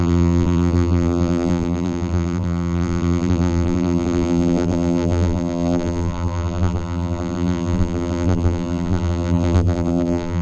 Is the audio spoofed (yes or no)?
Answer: yes